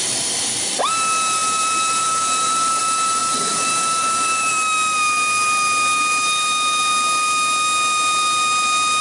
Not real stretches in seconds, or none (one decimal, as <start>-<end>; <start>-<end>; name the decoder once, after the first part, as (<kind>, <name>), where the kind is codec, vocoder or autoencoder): 1.4-2.8 (vocoder, BigVGAN v2); 3.2-4.5